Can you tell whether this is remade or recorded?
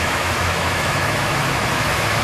remade